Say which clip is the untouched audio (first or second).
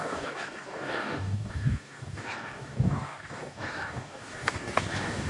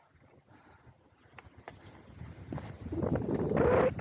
second